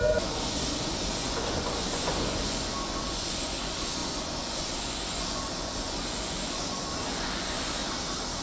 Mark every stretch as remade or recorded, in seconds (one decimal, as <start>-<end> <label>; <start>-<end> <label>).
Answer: 0.0-7.8 remade; 7.8-8.4 recorded